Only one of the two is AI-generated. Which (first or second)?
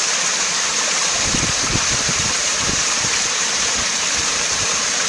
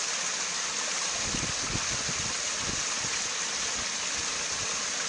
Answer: first